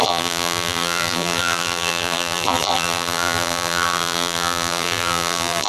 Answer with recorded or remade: remade